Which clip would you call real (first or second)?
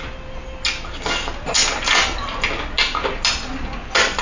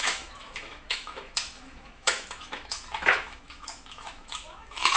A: first